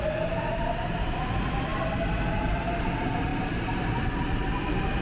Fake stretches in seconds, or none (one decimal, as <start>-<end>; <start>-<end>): none